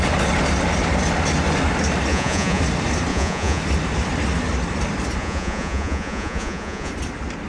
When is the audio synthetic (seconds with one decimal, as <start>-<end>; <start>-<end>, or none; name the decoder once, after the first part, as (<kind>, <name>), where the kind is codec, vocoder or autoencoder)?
2.1-2.6 (vocoder, Vocos); 3.1-3.6; 5.2-6.9